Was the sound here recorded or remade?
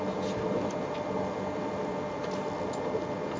remade